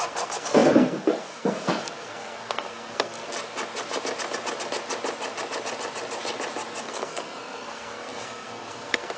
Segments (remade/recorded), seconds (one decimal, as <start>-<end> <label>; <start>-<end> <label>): 0.0-3.3 remade; 3.3-6.8 recorded; 6.8-9.2 remade